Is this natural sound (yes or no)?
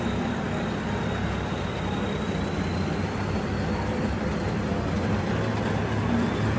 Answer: no